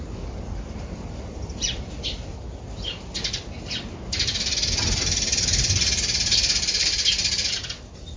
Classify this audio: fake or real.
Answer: real